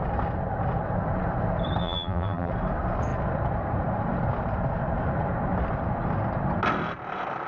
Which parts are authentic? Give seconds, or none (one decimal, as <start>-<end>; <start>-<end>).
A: 0.0-1.8; 2.5-7.5